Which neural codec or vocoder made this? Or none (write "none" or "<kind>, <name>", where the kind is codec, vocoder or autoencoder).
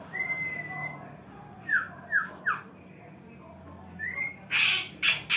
none